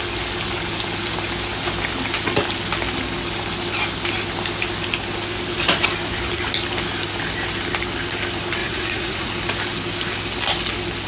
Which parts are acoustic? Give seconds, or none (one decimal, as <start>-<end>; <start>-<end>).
0.0-8.6; 9.3-11.1

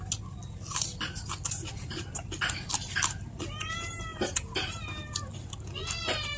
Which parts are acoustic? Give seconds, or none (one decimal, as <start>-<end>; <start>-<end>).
0.0-6.4

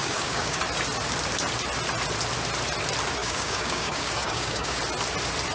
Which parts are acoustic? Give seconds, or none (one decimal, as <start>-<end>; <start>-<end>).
0.6-3.2; 4.8-5.5